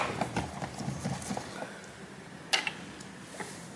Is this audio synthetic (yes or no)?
no